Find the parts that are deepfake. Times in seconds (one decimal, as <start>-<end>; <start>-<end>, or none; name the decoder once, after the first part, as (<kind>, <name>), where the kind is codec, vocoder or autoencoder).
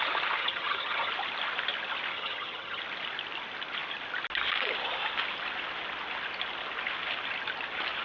0.4-1.1 (vocoder, HiFi-GAN); 2.1-2.8